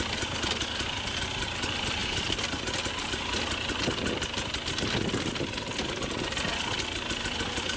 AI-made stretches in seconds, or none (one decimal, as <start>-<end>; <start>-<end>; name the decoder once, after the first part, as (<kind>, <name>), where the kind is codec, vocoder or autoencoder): none